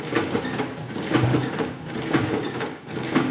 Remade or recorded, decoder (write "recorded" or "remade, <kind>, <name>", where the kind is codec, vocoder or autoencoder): remade, codec, DAC